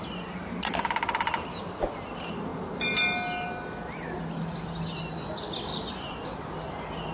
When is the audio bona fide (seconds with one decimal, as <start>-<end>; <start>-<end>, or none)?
0.0-7.1